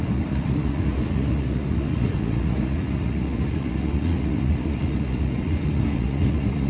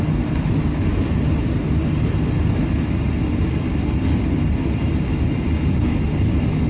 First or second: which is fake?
first